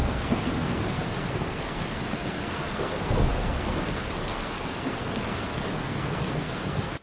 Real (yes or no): no